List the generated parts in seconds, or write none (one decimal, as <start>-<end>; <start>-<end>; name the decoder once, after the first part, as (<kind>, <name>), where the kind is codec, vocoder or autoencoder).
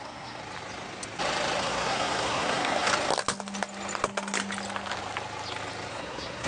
0.0-0.4 (codec, SNAC); 1.6-2.9; 5.9-6.5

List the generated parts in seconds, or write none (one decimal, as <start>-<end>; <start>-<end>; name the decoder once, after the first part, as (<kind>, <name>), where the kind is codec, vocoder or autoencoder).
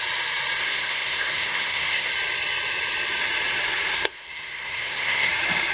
0.6-2.1 (codec, SNAC); 3.9-5.3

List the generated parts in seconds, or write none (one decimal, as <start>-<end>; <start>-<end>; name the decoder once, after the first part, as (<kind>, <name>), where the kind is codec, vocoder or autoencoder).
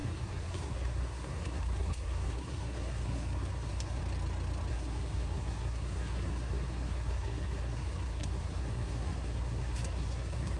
0.0-4.0 (codec, SNAC); 4.7-10.6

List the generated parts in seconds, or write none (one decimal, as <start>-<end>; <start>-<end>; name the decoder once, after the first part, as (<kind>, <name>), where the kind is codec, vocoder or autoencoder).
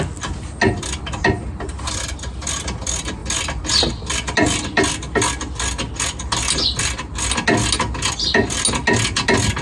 none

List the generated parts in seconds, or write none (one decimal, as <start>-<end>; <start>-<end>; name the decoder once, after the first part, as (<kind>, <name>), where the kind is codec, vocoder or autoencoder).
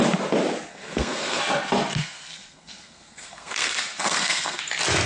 0.7-1.4 (codec, SNAC); 2.0-4.6